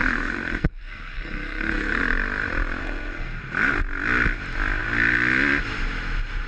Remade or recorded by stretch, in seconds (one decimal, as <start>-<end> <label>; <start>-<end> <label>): 0.0-2.0 remade; 2.0-2.8 recorded; 2.8-3.4 remade; 3.4-6.5 recorded

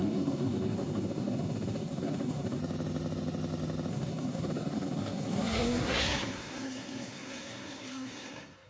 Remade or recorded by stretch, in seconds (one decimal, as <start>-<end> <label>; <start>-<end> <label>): 0.0-2.6 remade; 2.6-3.9 recorded; 3.9-8.7 remade

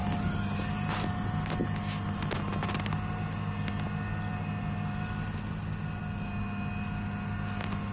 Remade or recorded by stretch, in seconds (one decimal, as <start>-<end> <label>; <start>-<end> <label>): 0.0-7.9 recorded

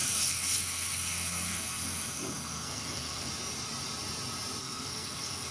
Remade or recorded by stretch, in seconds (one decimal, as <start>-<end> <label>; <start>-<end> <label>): 0.0-3.3 remade; 3.3-4.6 recorded; 4.6-5.5 remade